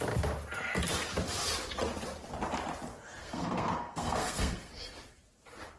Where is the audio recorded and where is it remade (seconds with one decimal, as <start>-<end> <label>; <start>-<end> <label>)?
0.0-3.2 recorded; 3.2-4.7 remade; 4.7-5.8 recorded